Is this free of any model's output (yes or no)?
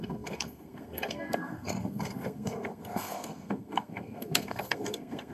no